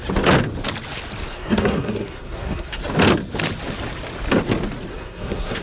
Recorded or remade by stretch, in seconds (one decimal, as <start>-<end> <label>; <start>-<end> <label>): 0.0-1.3 recorded; 1.3-2.8 remade; 2.8-4.9 recorded; 4.9-5.6 remade